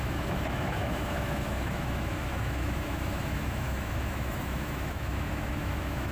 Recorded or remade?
remade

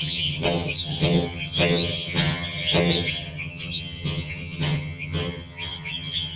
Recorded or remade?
remade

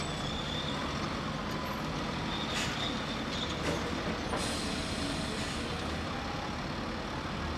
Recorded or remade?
recorded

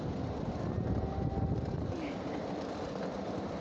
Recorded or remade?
recorded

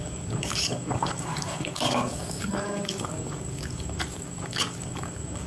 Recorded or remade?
remade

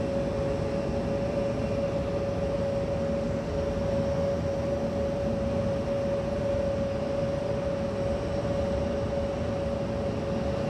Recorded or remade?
recorded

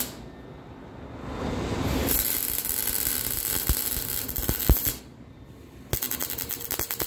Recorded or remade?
recorded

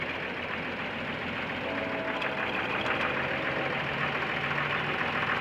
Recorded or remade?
recorded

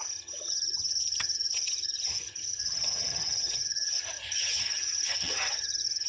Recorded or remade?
remade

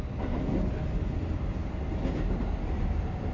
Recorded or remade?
recorded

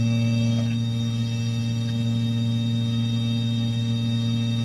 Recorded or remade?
remade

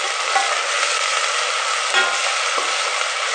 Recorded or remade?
recorded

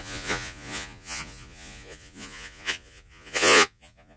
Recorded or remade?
remade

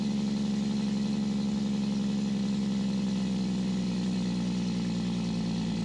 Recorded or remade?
recorded